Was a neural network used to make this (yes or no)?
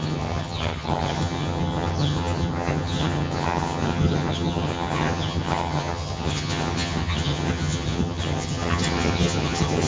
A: yes